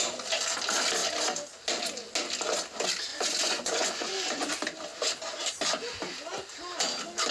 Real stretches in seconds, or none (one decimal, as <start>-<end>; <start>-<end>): 0.0-3.1; 4.5-7.3